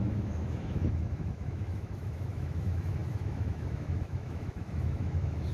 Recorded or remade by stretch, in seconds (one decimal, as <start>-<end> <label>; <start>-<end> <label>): 0.0-5.5 remade